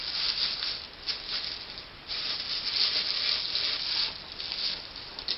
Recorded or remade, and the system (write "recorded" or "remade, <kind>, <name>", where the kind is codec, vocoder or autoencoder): recorded